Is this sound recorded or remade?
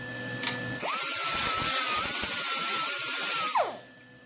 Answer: recorded